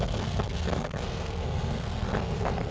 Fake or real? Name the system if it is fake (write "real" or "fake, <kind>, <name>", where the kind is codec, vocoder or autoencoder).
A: fake, codec, SNAC